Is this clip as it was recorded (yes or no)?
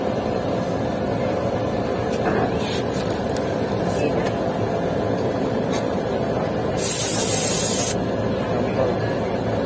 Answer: yes